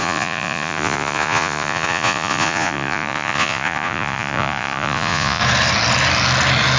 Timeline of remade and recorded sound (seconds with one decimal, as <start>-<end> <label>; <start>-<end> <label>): 0.0-5.4 remade; 5.4-6.8 recorded